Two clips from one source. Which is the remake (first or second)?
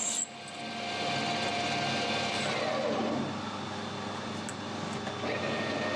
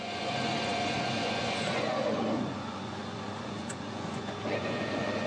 second